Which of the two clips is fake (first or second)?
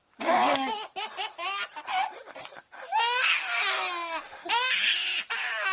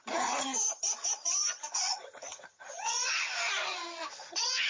second